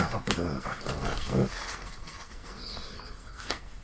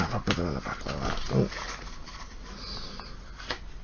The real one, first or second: second